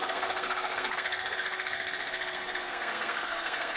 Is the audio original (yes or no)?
no